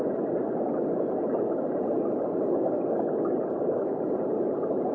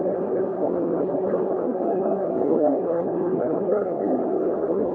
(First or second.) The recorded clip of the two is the first